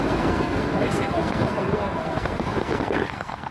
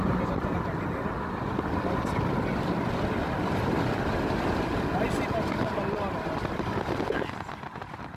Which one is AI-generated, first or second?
first